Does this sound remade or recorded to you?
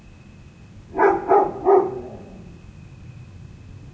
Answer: recorded